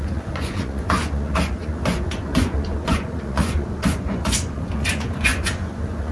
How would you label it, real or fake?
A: fake